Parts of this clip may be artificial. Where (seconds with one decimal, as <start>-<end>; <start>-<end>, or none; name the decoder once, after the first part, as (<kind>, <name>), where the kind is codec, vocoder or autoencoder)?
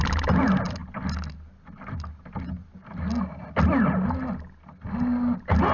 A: none